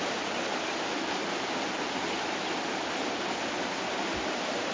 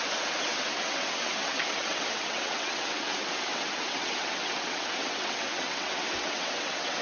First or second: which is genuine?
first